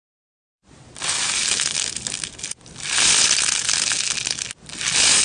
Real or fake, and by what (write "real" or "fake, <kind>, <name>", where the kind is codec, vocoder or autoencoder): real